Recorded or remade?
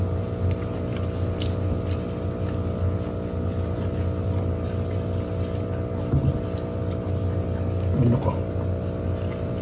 recorded